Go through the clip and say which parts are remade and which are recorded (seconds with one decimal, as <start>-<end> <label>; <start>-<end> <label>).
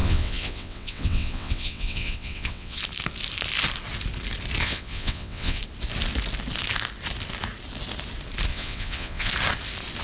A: 0.0-2.8 remade; 2.8-4.6 recorded; 4.6-5.6 remade; 5.6-8.5 recorded; 8.5-9.3 remade; 9.3-10.0 recorded